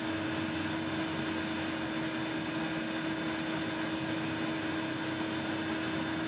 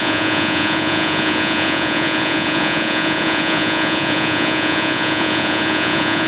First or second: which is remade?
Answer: second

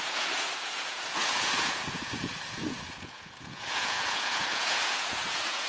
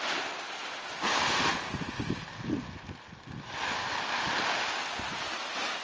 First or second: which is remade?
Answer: first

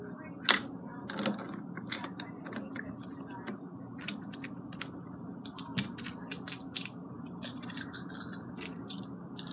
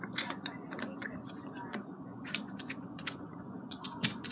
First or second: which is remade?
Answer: second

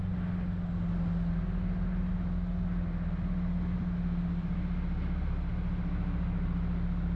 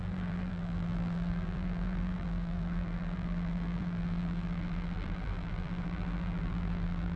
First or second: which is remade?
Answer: second